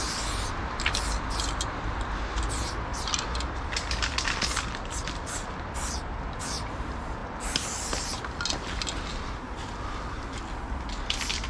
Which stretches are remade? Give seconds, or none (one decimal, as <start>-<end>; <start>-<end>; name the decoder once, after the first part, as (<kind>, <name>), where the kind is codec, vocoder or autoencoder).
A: none